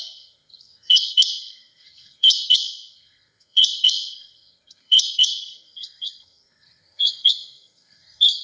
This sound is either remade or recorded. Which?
remade